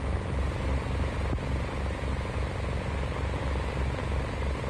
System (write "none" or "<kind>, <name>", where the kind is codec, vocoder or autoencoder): none